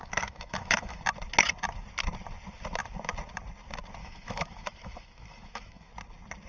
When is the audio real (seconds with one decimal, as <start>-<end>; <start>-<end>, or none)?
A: 1.0-4.0; 5.9-6.5